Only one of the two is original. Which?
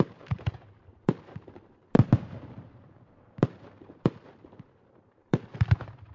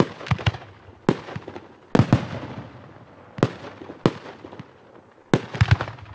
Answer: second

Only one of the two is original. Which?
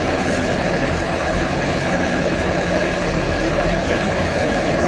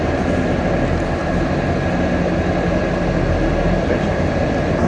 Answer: second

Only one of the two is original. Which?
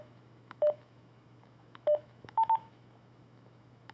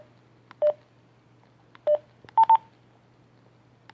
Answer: second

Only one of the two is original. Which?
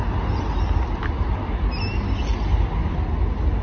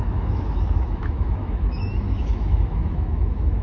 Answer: first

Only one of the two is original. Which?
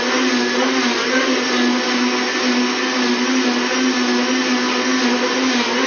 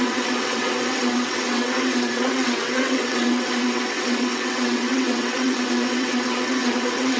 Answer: first